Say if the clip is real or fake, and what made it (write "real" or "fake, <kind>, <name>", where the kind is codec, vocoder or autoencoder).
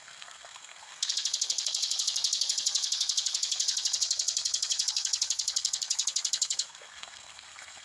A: fake, codec, SNAC